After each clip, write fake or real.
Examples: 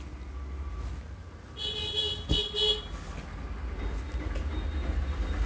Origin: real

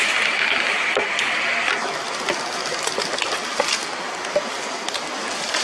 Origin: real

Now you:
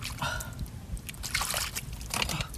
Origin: real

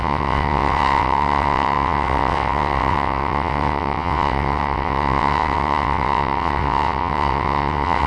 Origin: fake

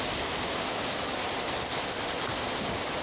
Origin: real